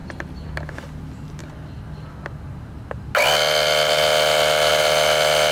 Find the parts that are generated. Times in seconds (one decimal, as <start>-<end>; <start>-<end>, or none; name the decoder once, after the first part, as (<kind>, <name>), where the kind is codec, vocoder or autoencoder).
none